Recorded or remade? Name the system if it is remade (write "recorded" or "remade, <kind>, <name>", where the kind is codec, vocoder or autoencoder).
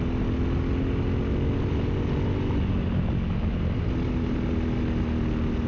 recorded